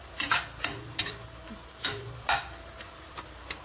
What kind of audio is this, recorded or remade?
remade